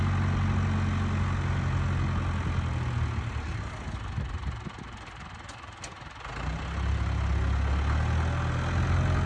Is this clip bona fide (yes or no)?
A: yes